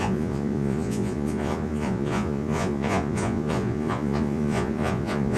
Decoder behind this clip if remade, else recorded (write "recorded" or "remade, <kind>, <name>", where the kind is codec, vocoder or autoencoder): remade, vocoder, Vocos